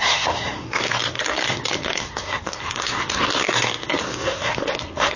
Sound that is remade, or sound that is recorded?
remade